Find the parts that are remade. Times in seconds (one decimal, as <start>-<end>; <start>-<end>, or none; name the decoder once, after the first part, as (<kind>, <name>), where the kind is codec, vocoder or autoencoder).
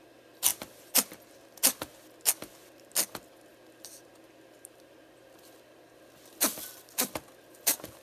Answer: none